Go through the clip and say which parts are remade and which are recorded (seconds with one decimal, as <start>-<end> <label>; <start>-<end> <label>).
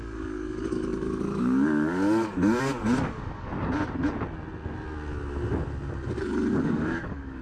0.0-3.5 remade; 3.5-6.2 recorded; 6.2-7.4 remade